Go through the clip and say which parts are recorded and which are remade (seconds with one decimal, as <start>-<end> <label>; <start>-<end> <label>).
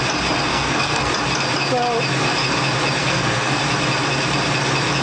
0.0-0.5 recorded; 0.5-1.1 remade; 1.1-3.0 recorded; 3.0-3.6 remade; 3.6-5.0 recorded